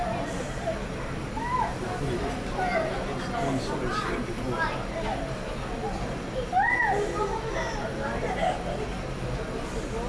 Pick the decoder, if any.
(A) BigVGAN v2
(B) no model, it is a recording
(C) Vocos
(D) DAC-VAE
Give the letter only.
B